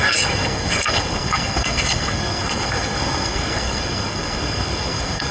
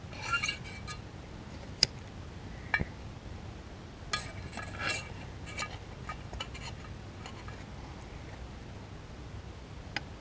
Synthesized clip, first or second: first